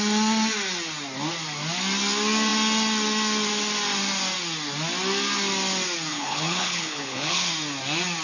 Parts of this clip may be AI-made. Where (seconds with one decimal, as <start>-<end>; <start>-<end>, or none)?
6.1-7.5